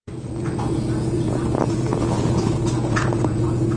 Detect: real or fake fake